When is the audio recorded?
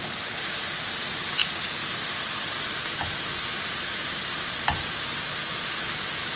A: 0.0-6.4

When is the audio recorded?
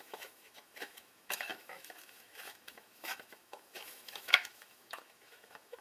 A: none